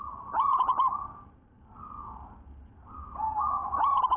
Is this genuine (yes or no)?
yes